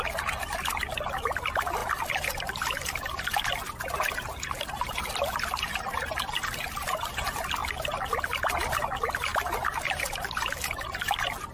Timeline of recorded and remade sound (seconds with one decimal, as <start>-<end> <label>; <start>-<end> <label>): 0.0-11.5 recorded